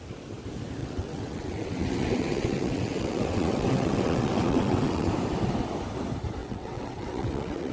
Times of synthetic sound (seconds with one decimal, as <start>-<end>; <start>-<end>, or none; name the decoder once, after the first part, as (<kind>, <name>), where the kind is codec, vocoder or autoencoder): 0.8-5.1 (vocoder, WaveNeXt); 6.4-7.7